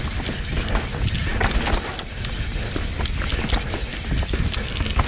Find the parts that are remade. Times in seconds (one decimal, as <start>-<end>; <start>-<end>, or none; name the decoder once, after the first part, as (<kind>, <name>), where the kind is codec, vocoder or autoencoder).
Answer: none